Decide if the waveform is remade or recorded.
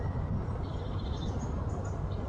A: recorded